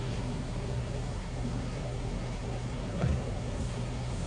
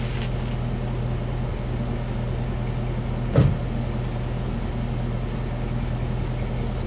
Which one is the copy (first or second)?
first